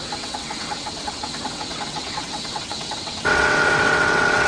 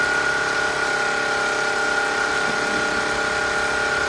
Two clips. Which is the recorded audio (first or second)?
second